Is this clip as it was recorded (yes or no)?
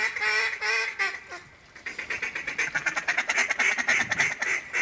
yes